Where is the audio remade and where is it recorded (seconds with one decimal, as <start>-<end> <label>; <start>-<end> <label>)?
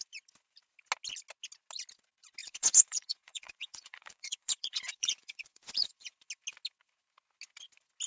0.0-2.4 recorded; 2.4-6.1 remade; 6.1-8.1 recorded